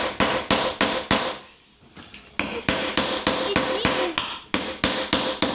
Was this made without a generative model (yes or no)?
yes